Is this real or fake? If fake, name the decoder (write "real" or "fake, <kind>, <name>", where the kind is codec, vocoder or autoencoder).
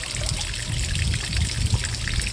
real